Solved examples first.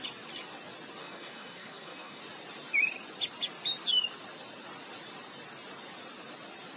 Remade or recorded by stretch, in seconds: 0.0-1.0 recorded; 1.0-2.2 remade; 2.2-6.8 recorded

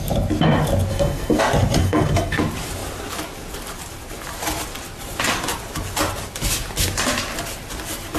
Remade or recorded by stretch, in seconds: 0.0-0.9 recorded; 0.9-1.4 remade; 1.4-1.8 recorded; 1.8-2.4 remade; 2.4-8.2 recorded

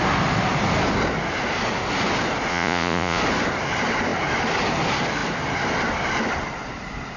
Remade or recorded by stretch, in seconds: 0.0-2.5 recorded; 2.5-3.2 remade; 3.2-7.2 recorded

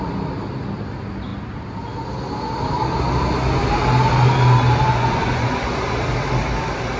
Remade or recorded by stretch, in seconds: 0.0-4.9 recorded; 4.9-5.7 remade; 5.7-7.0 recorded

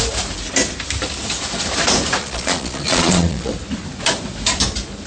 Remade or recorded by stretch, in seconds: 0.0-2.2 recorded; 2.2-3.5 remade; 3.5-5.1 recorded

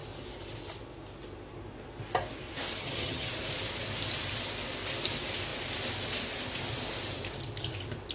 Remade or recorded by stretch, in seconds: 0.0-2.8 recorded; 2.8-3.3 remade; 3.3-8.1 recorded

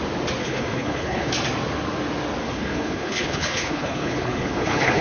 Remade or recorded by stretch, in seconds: 0.0-0.4 recorded; 0.4-1.3 remade; 1.3-2.4 recorded; 2.4-5.0 remade